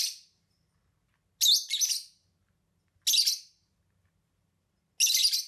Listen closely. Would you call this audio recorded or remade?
recorded